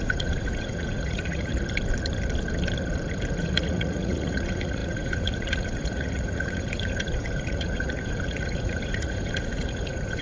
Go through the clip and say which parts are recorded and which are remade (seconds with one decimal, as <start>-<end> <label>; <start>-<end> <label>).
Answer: 0.0-1.5 remade; 1.5-3.4 recorded; 3.4-10.2 remade